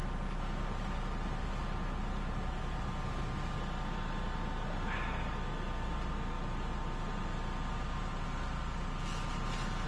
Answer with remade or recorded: recorded